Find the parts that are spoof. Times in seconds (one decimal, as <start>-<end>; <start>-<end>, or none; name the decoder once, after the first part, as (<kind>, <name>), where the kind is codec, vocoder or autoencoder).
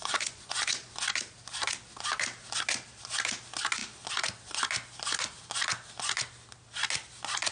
0.0-0.9 (vocoder, Vocos)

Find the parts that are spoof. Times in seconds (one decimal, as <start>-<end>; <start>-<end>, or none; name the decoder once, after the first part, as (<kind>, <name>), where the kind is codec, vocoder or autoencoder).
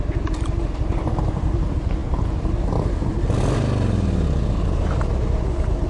none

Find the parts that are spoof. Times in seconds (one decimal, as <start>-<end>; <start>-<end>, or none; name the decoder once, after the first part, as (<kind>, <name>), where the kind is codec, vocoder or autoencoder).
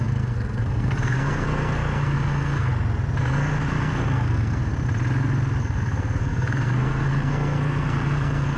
0.0-2.7 (codec, SNAC); 3.2-4.7; 5.6-8.6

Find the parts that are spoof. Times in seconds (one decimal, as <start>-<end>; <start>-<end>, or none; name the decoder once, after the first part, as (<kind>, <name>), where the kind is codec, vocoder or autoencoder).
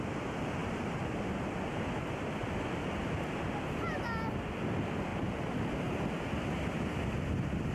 5.1-5.7 (vocoder, BigVGAN v2)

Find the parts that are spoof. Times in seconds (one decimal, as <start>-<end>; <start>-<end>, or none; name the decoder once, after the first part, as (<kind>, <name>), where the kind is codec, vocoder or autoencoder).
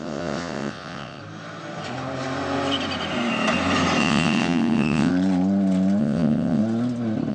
0.0-1.2 (vocoder, WaveNeXt); 4.0-5.1; 6.0-6.6